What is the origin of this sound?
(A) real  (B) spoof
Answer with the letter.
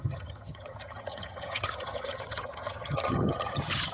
B